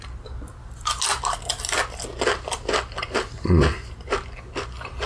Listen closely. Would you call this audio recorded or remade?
recorded